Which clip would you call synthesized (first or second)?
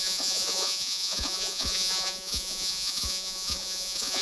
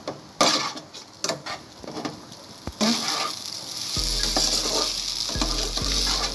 first